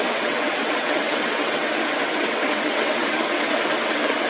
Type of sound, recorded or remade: remade